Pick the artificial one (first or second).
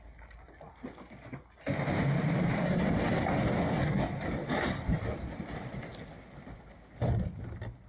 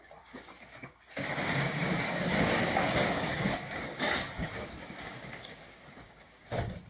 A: second